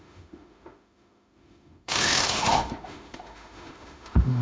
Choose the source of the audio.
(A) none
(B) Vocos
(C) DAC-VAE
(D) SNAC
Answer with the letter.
C